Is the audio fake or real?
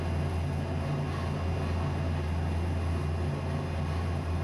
real